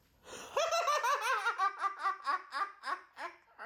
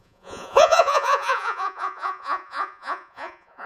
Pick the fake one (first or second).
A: second